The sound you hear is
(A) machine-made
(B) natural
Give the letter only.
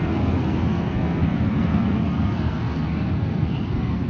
A